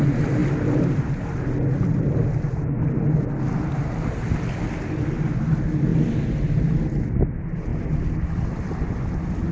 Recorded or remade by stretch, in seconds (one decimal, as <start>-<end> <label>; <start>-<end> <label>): 0.0-9.5 recorded